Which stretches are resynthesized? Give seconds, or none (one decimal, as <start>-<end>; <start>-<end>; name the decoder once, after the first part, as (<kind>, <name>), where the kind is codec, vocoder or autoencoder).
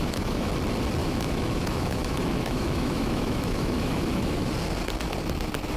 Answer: 0.0-0.5 (autoencoder, DAC-VAE); 1.0-4.5